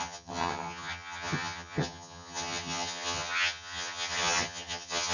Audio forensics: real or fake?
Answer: fake